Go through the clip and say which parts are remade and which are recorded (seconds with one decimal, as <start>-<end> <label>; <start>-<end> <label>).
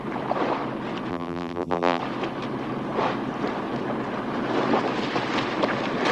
0.0-1.1 recorded; 1.1-2.0 remade; 2.0-6.1 recorded